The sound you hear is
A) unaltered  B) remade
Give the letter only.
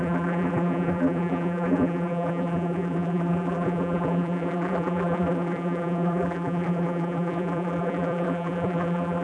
B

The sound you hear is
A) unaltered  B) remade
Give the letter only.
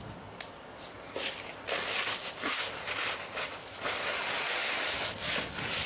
A